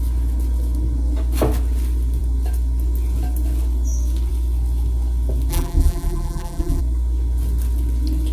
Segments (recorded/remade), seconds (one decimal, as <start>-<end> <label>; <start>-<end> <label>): 0.0-5.5 recorded; 5.5-6.8 remade; 6.8-8.3 recorded